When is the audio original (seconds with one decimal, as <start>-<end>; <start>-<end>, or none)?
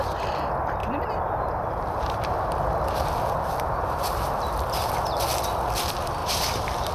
0.0-0.8; 4.9-6.2